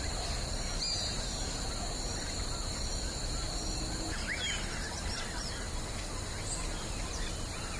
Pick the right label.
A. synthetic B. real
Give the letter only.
B